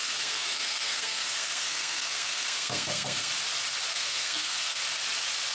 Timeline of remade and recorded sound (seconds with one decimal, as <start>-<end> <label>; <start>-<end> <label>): 0.0-3.3 remade; 3.3-3.9 recorded; 3.9-4.8 remade; 4.8-5.5 recorded